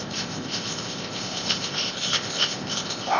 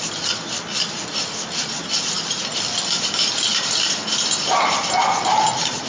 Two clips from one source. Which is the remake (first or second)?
first